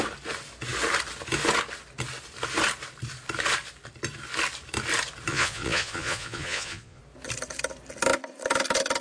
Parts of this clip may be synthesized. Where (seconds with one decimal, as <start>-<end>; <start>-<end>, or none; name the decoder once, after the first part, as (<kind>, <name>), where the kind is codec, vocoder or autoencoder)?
5.3-7.0 (vocoder, Vocos)

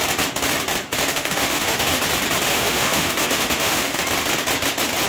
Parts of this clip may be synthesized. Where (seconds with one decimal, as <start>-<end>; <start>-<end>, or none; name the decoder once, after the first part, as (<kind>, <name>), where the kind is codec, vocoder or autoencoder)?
1.1-2.0 (autoencoder, DAC-VAE); 2.5-4.0

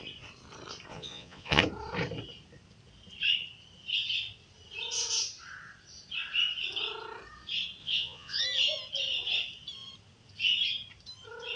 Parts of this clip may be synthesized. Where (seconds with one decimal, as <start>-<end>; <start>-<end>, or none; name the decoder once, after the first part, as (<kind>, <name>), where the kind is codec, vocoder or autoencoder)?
0.9-1.6 (vocoder, Vocos); 7.8-8.4

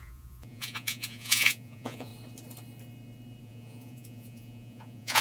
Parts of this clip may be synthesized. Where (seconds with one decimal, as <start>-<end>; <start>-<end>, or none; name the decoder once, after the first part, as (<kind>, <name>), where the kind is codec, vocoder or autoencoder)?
0.0-2.1 (vocoder, Vocos); 3.4-5.2

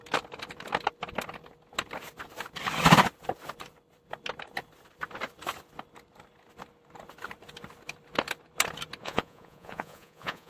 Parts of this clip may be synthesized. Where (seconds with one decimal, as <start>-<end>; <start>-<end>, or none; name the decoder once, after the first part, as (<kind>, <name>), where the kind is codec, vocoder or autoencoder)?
9.0-10.5 (vocoder, Vocos)

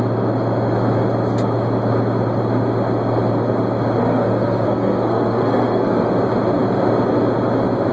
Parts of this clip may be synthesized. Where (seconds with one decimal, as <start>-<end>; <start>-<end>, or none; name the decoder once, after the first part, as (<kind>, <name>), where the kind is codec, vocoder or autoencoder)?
4.0-6.1 (codec, SNAC)

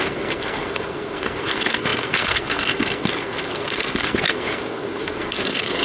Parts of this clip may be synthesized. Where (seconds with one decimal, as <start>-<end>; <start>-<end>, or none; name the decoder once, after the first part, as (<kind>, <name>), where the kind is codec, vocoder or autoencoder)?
0.0-5.8 (codec, SNAC)

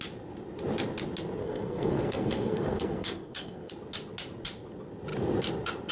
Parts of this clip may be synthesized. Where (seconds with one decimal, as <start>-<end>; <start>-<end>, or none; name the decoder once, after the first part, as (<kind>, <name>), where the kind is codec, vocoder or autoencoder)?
1.4-3.7 (codec, SNAC)